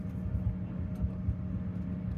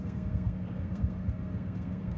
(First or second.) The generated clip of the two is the second